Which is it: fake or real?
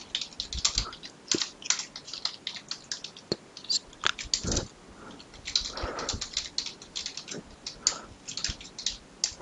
real